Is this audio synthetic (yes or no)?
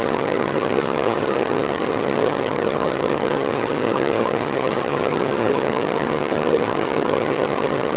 yes